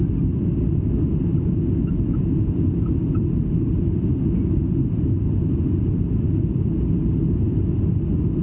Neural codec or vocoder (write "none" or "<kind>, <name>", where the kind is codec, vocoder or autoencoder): none